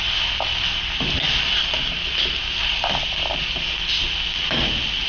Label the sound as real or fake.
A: real